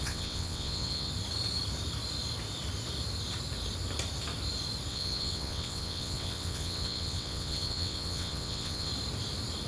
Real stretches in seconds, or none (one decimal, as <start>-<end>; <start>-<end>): 1.1-4.9; 8.9-9.7

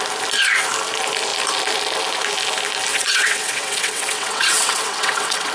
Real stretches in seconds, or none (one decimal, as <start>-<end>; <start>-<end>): 0.0-2.9

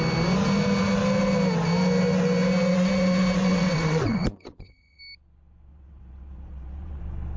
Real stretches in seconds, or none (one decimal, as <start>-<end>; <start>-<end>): 0.0-3.5; 5.0-5.7; 7.0-7.4

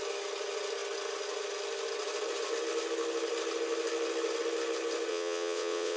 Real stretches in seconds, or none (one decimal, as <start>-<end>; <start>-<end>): 0.0-5.1

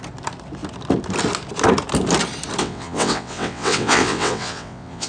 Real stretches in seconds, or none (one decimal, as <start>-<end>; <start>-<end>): 0.0-2.6

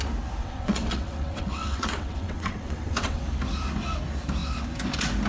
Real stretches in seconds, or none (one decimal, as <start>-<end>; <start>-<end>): 0.0-0.4; 3.2-5.3

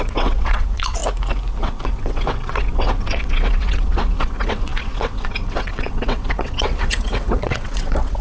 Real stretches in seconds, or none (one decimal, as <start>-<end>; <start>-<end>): 1.0-1.6

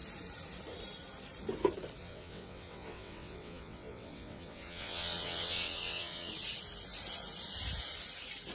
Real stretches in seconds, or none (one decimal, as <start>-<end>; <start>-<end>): 0.0-2.0; 6.3-8.5